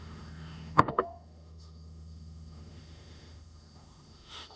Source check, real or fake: fake